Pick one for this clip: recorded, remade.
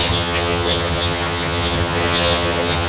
remade